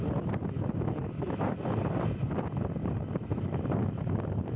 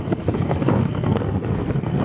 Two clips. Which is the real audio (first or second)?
first